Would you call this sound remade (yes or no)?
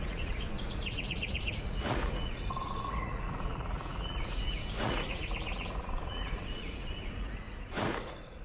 yes